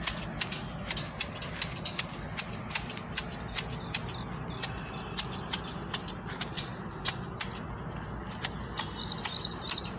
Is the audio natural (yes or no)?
yes